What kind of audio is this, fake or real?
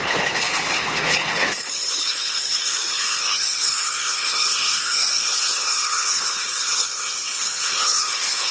fake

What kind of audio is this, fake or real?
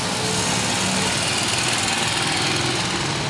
real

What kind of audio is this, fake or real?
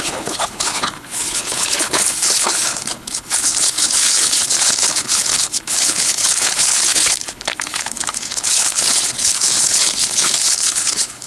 fake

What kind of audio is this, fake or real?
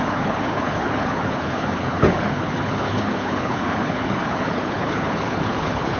fake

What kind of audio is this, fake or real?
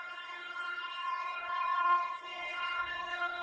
fake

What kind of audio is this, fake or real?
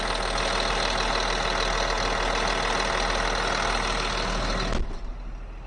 real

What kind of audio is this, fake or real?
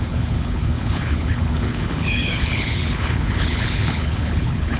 fake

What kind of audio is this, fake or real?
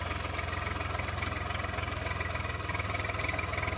real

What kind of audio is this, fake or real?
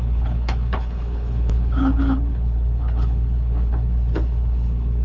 fake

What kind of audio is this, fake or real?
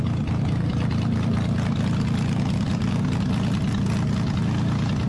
real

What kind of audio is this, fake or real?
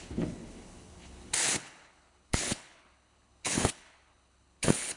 fake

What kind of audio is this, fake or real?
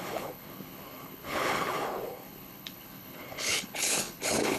fake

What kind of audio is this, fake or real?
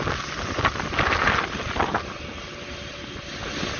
real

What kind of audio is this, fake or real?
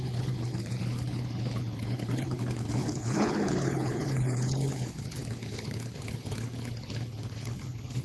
fake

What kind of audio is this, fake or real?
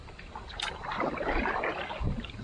real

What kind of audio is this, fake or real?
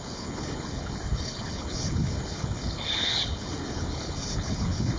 fake